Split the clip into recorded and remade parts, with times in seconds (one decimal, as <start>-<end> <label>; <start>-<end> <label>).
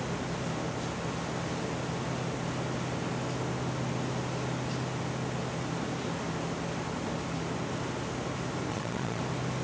0.0-8.7 recorded; 8.7-9.2 remade; 9.2-9.6 recorded